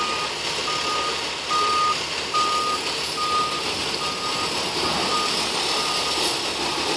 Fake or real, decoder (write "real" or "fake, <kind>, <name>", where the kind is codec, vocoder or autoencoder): real